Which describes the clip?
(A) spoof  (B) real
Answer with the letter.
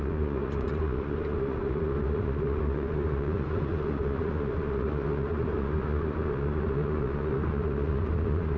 A